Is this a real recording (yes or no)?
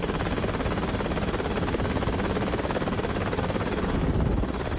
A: yes